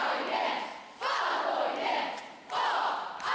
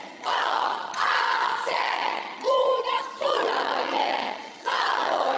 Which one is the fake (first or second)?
second